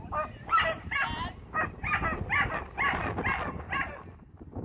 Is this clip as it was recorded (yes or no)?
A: yes